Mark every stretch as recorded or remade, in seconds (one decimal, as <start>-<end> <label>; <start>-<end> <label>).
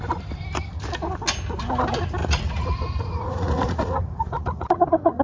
0.0-2.2 recorded; 2.2-5.2 remade